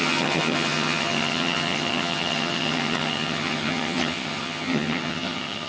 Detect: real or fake fake